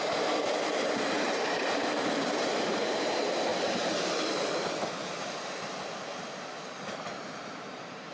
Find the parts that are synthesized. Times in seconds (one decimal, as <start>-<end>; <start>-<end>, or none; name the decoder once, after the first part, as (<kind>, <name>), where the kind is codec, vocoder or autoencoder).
0.0-8.1 (vocoder, BigVGAN v2)